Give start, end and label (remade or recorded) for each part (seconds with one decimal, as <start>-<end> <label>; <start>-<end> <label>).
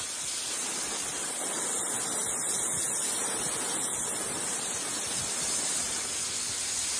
0.0-7.0 recorded